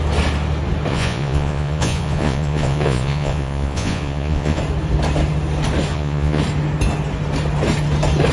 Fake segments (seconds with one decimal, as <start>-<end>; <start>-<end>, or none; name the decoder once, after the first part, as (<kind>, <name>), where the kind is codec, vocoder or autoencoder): 0.9-4.6 (vocoder, Vocos); 5.9-6.4